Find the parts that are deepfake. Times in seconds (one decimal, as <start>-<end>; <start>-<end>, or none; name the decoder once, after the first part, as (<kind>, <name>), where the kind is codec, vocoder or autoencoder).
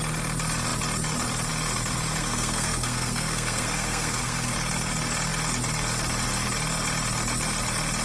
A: 2.2-4.5 (codec, SNAC)